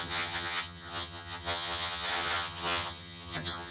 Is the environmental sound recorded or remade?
remade